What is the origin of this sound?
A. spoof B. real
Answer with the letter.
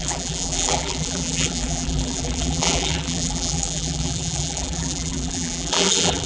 A